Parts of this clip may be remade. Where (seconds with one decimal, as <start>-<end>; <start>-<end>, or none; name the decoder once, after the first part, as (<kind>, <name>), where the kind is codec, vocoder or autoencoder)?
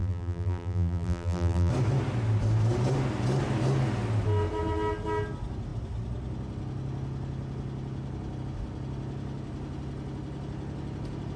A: 0.0-1.7 (vocoder, BigVGAN v2)